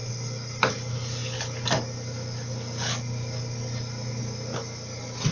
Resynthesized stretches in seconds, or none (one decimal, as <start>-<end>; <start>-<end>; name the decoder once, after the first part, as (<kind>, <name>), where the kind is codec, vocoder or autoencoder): none